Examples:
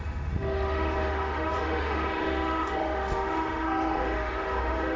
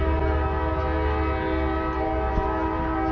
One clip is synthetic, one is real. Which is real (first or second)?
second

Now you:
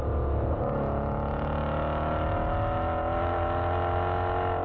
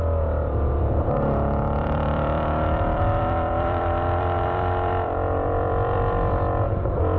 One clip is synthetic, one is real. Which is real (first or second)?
first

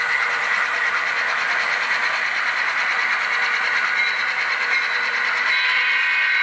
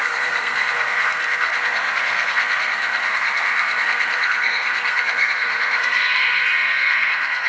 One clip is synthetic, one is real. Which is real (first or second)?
first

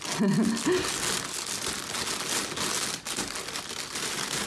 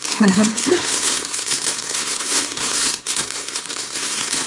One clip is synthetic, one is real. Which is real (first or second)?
first